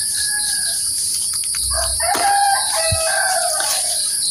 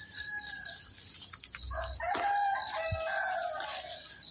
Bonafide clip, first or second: second